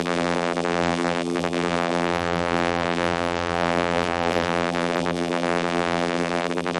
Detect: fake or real fake